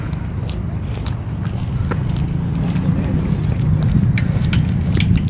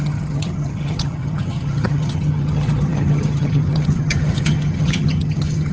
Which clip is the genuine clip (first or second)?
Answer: first